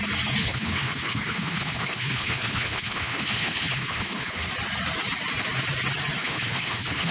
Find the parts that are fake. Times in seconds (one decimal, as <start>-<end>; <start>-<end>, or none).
0.4-4.5; 6.2-7.1